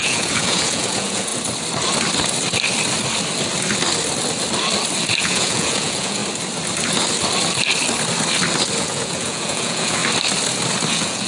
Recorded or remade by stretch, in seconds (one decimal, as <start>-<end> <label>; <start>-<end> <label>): 0.0-1.3 remade; 1.3-5.2 recorded; 5.2-6.2 remade; 6.2-8.8 recorded; 8.8-10.0 remade; 10.0-10.9 recorded; 10.9-11.3 remade